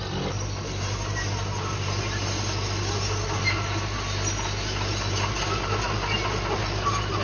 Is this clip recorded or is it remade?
recorded